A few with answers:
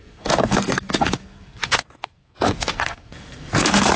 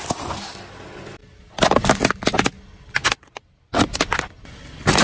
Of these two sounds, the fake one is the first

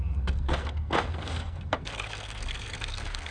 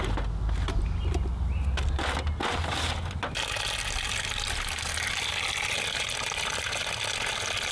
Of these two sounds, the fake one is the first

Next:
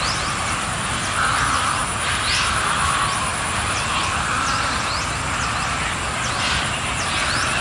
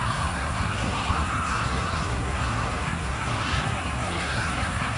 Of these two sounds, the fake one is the second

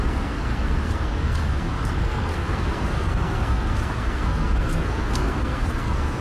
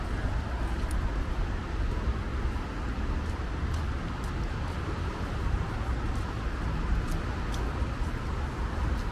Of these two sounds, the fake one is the first